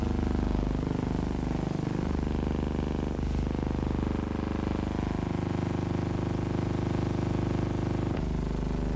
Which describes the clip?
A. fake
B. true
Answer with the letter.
B